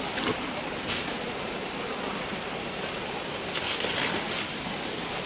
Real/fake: real